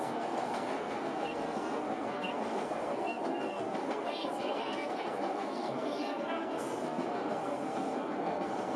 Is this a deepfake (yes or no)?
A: yes